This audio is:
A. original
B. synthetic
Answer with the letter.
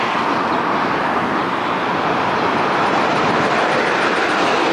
A